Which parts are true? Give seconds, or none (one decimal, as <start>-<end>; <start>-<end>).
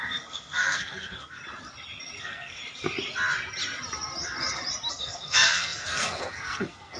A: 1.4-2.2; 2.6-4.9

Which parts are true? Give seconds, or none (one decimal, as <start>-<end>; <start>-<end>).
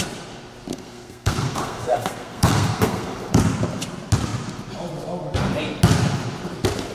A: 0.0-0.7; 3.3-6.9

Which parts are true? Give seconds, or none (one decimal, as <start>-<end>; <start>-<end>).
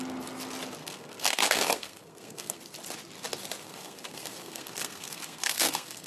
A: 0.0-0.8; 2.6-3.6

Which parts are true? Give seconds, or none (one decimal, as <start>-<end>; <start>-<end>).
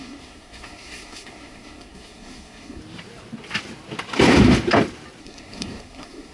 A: 2.8-5.2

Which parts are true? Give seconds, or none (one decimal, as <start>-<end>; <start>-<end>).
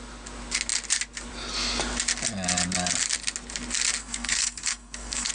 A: 0.0-4.0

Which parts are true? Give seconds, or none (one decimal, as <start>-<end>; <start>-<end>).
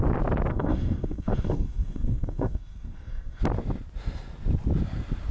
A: 0.0-0.5; 3.4-5.3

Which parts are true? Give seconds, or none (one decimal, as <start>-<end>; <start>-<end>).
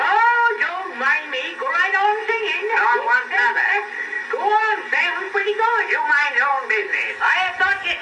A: 0.0-8.0